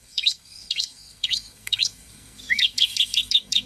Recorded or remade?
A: remade